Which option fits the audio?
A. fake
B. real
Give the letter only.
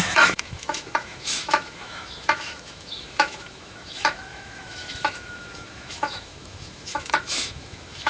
A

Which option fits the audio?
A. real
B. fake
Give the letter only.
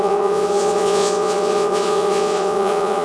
B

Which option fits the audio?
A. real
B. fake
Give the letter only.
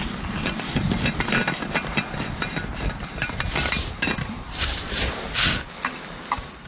A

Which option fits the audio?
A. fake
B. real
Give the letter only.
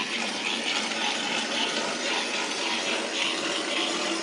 A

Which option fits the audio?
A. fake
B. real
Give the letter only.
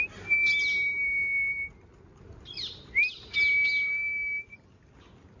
B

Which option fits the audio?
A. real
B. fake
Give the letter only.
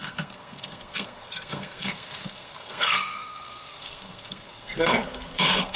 B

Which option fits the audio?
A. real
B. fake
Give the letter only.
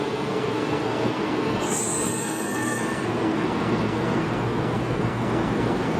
B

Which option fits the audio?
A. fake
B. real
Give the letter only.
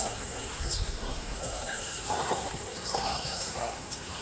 A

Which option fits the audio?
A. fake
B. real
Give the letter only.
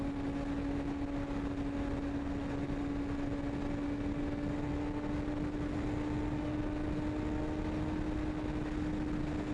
B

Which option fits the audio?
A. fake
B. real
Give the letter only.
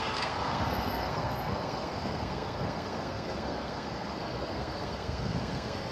A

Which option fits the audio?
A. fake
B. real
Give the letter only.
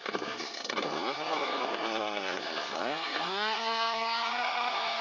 A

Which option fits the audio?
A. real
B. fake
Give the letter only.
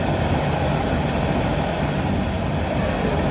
A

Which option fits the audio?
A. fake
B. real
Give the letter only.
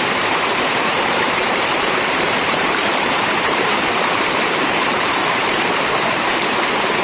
A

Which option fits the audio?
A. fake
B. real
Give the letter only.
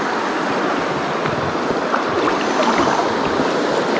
B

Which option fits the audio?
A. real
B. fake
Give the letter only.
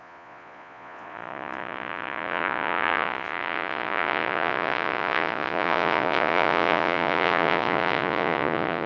B